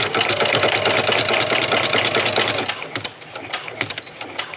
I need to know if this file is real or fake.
real